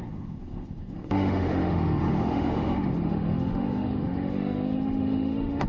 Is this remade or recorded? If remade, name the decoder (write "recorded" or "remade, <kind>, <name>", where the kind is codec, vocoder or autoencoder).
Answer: remade, autoencoder, DAC-VAE